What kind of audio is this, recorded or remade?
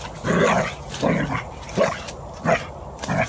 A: recorded